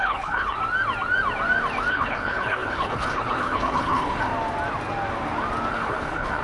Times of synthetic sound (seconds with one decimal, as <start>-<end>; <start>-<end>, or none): 0.0-0.6; 1.9-4.3; 5.7-6.4